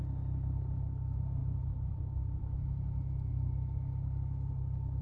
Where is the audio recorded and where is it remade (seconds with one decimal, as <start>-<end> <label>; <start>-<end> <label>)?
0.0-5.0 recorded